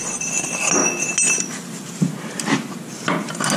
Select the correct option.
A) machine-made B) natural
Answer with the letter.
B